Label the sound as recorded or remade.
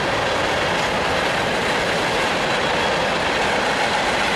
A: recorded